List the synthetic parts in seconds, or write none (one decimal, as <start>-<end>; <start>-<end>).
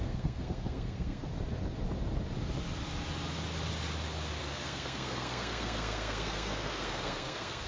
0.0-1.3; 4.4-7.7